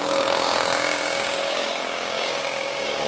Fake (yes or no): yes